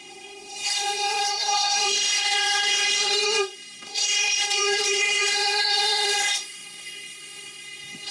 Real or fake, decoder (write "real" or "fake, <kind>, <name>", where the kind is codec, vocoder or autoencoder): fake, codec, SNAC